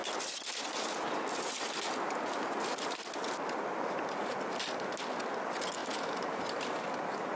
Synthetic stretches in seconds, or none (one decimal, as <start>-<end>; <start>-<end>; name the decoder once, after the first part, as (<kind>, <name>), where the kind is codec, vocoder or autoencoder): 5.8-7.0 (vocoder, BigVGAN v2)